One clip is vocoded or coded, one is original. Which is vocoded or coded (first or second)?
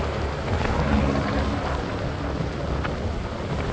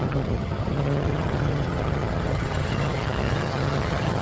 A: second